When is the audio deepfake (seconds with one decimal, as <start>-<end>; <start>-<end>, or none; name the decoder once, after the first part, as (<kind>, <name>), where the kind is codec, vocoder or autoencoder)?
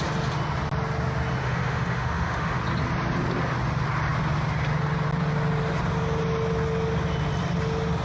1.4-2.6 (autoencoder, DAC-VAE)